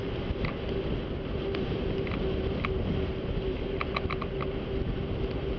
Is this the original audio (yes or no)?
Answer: yes